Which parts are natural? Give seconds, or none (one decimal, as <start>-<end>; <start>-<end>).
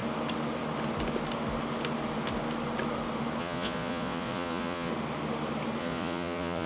0.0-3.4; 4.9-5.8